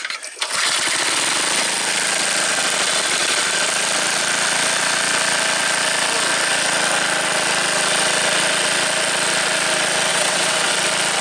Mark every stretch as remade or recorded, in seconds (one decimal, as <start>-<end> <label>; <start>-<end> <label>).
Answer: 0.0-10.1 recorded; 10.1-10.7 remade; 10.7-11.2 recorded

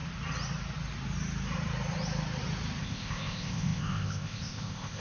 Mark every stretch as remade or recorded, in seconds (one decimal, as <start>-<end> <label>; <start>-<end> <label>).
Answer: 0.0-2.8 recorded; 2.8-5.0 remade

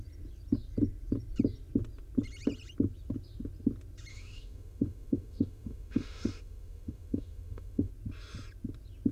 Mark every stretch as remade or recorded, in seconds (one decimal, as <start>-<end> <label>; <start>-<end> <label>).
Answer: 0.0-4.1 recorded; 4.1-7.9 remade; 7.9-9.1 recorded

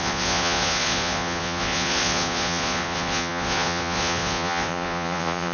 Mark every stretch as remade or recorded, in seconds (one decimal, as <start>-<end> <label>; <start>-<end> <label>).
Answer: 0.0-5.5 remade